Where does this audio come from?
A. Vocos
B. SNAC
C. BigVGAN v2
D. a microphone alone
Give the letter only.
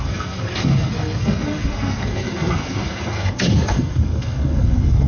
B